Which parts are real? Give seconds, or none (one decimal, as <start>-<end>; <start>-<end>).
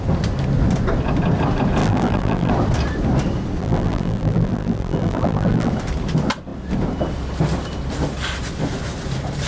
0.0-1.8; 2.5-3.6; 5.7-9.5